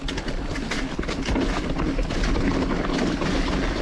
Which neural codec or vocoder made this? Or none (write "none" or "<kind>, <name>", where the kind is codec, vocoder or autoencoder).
none